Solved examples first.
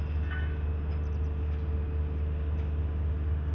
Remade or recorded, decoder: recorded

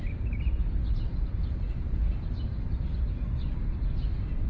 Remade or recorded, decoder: remade, vocoder, BigVGAN v2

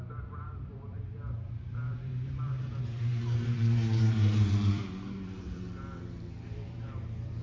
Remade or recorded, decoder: remade, vocoder, BigVGAN v2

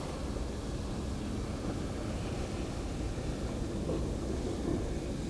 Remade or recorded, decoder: recorded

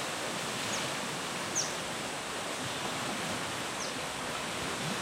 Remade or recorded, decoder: recorded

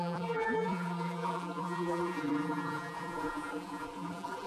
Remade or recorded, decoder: remade, vocoder, BigVGAN v2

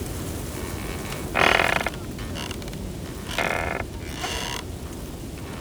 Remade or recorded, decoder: remade, vocoder, BigVGAN v2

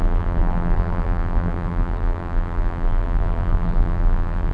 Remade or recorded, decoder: remade, vocoder, BigVGAN v2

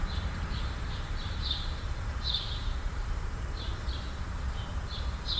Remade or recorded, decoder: remade, vocoder, BigVGAN v2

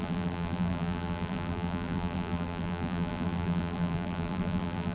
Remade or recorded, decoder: remade, vocoder, BigVGAN v2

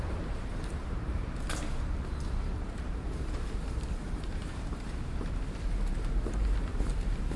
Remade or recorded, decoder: remade, vocoder, BigVGAN v2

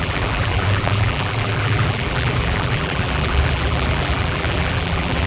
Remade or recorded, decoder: remade, vocoder, BigVGAN v2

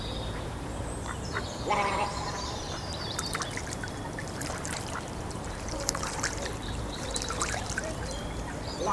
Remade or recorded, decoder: remade, vocoder, BigVGAN v2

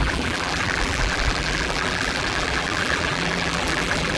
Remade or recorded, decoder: remade, vocoder, BigVGAN v2